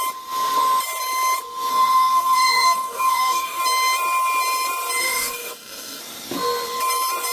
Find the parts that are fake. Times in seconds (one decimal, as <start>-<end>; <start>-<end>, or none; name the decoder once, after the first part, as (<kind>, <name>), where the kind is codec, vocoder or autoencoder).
1.7-3.6 (codec, DAC); 5.0-6.0